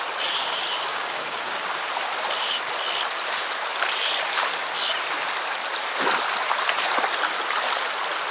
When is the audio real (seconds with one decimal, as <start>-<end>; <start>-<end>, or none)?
0.0-0.9; 1.9-8.3